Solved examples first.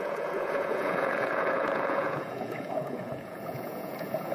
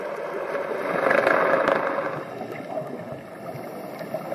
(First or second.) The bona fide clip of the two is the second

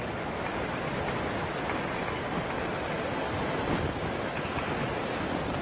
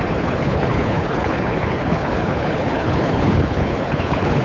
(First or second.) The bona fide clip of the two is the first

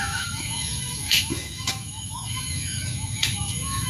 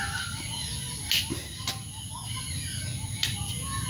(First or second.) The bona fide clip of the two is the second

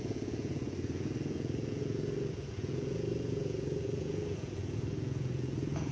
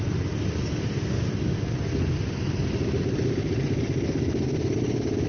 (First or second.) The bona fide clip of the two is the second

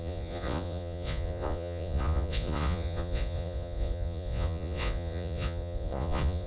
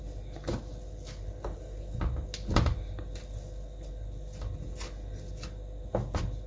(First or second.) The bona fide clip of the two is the second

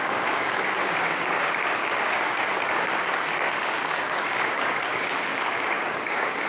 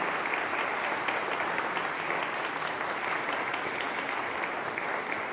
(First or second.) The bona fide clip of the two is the second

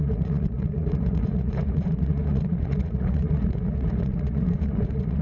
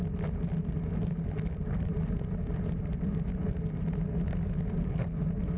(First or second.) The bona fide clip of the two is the second